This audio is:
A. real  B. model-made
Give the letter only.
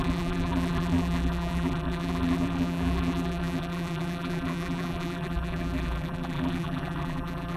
B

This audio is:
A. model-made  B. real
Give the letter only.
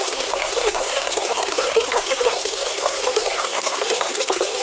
A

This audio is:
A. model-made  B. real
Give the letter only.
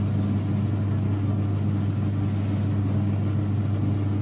B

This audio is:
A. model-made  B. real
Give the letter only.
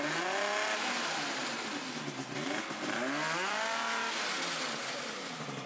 B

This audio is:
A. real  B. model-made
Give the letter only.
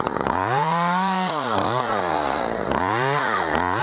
B